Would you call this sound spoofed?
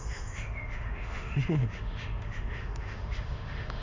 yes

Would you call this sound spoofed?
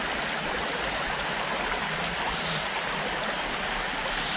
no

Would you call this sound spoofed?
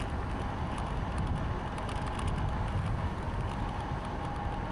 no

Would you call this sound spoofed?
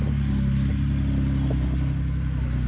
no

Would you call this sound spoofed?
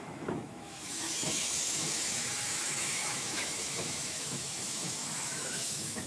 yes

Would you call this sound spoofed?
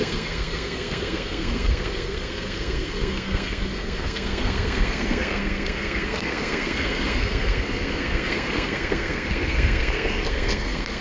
yes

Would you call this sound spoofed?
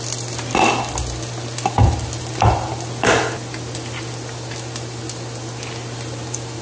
no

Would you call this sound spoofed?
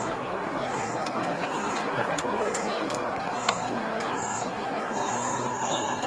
yes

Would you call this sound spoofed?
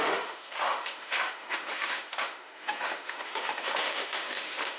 yes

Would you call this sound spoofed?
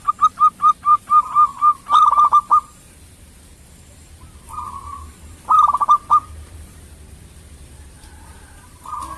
yes